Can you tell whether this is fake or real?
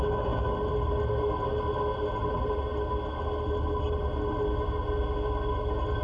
real